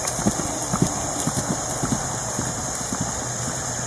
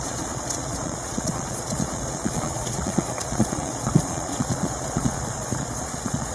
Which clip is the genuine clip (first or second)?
first